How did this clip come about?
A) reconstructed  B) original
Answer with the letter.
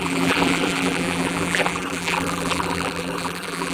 A